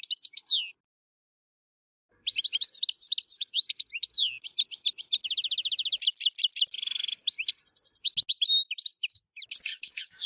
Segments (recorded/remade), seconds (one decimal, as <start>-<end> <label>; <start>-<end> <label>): 0.0-9.7 recorded; 9.7-10.3 remade